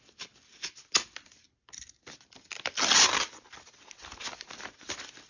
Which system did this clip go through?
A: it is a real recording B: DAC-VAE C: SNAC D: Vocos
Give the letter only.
A